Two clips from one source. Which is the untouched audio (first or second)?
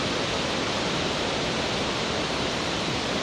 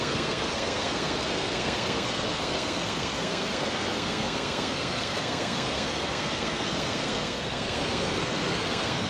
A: first